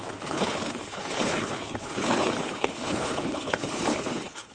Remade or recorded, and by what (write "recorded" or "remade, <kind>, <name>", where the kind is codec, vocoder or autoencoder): remade, codec, HILCodec